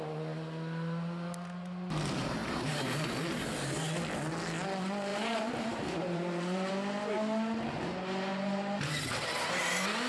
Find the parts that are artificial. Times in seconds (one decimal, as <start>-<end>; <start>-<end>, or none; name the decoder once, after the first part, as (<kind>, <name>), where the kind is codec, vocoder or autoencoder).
2.4-3.1 (vocoder, BigVGAN v2); 5.1-6.7